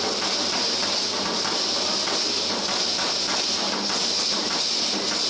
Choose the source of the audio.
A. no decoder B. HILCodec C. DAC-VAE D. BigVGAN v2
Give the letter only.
A